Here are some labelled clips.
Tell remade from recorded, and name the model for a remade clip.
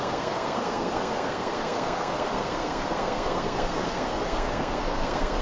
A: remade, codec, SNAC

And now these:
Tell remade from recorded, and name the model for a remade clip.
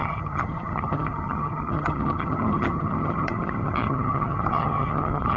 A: remade, vocoder, HiFi-GAN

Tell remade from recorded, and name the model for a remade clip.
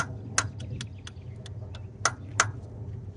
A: recorded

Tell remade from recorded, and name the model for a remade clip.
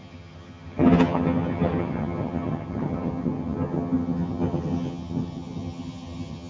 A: remade, vocoder, HiFi-GAN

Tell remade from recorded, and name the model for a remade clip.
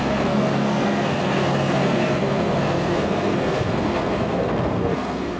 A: remade, codec, SNAC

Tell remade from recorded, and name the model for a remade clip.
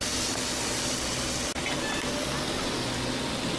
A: recorded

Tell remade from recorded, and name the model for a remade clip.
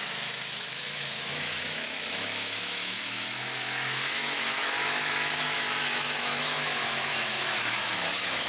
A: remade, autoencoder, DAC-VAE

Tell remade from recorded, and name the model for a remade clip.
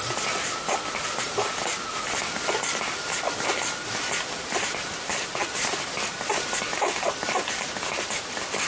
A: recorded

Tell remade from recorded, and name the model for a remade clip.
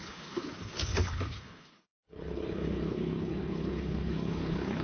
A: remade, codec, HILCodec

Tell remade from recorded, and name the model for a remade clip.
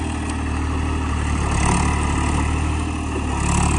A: recorded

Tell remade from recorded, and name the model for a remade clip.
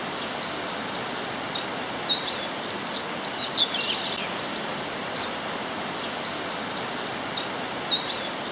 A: recorded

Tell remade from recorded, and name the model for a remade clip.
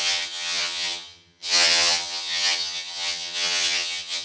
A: remade, vocoder, HiFi-GAN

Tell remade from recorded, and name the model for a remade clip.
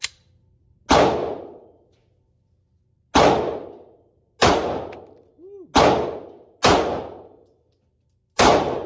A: recorded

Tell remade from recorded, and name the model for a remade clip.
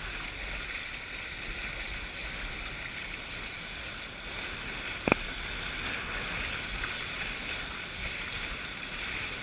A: recorded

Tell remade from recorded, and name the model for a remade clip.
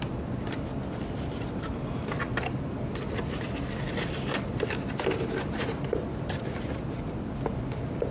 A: recorded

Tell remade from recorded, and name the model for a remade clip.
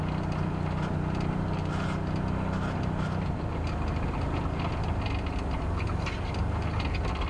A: recorded